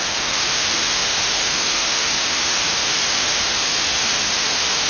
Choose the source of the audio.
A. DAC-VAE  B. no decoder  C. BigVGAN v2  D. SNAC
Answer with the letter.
A